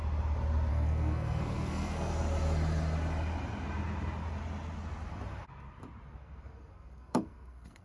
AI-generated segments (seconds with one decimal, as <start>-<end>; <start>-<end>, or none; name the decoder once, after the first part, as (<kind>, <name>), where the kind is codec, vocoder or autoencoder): 0.7-2.1 (codec, SNAC); 6.1-7.8